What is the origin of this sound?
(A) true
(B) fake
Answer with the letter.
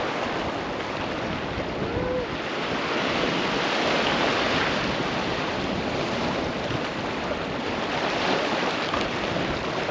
A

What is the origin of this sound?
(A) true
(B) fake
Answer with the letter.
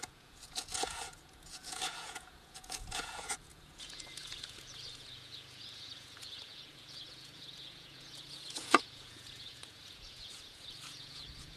B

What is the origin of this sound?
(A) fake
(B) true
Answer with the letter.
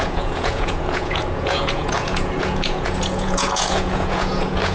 A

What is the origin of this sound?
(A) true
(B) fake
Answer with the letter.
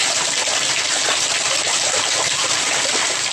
A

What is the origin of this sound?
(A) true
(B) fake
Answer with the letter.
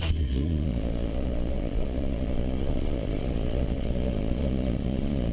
B